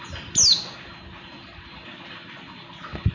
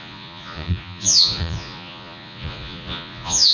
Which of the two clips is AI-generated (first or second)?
second